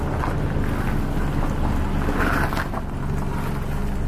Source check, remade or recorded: recorded